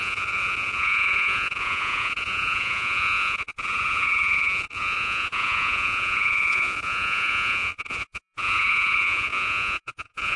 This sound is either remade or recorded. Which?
remade